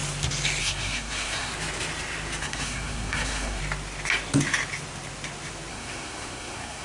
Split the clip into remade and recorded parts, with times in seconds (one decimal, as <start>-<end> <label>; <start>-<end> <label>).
0.0-0.6 recorded; 0.6-1.5 remade; 1.5-2.4 recorded; 2.4-3.6 remade; 3.6-5.7 recorded; 5.7-6.8 remade